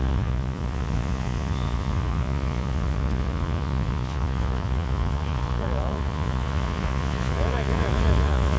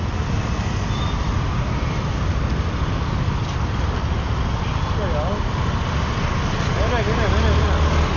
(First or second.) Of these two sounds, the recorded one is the second